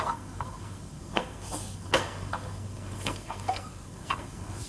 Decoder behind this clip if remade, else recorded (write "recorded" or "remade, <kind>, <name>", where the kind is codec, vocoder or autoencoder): remade, codec, SNAC